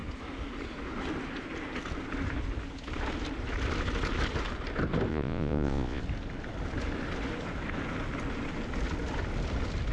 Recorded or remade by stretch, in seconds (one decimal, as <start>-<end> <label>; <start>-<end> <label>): 0.0-5.1 recorded; 5.1-6.0 remade; 6.0-9.9 recorded